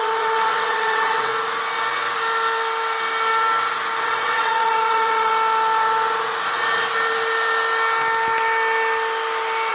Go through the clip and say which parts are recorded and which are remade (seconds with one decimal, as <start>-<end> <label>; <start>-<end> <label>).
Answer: 0.0-1.3 remade; 1.3-4.0 recorded; 4.0-5.3 remade; 5.3-9.7 recorded